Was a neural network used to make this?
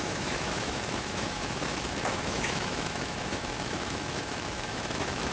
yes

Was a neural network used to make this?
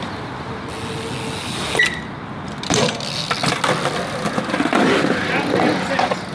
no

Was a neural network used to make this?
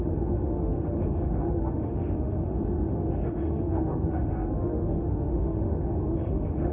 yes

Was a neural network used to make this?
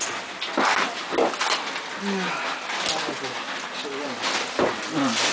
no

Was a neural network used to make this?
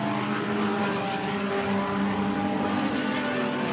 no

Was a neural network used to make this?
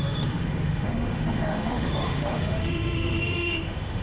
yes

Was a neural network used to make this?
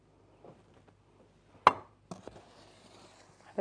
no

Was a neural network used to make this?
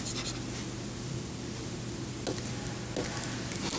no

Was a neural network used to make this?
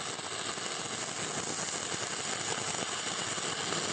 no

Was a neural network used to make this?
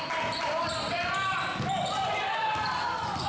no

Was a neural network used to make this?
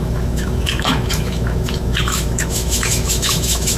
yes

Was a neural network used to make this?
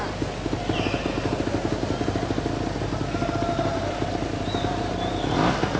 no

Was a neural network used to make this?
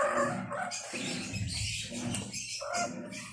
no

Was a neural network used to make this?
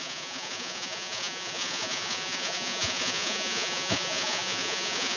yes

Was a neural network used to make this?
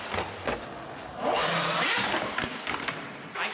no